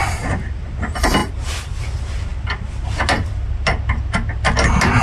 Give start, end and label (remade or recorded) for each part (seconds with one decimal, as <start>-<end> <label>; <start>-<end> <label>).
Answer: 0.0-5.0 recorded